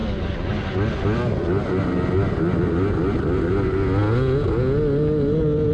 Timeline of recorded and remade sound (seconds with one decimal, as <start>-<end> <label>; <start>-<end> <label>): 0.0-5.7 recorded